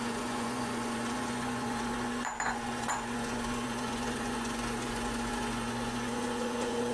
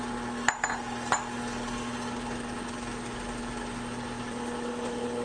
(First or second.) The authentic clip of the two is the second